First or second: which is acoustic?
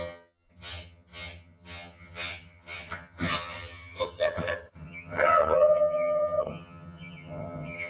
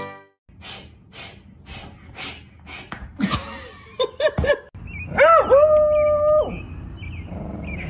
second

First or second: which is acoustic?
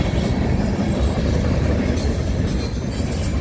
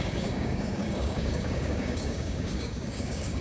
first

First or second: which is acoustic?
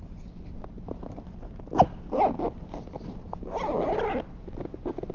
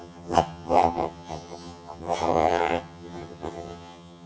first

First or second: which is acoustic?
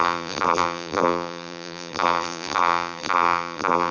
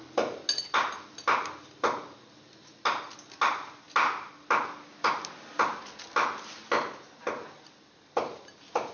second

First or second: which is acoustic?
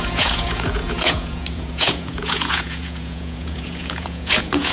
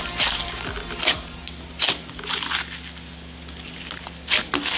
second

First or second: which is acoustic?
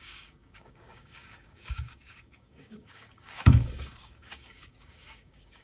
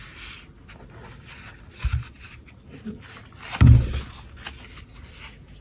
second